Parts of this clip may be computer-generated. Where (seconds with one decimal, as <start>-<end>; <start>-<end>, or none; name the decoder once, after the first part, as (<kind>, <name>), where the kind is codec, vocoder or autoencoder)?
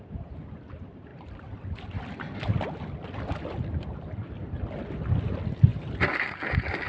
none